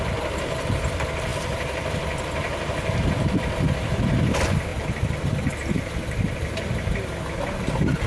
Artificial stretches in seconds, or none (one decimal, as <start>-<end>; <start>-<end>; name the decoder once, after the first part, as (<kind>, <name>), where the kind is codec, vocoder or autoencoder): none